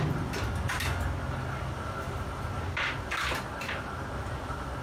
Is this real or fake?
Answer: real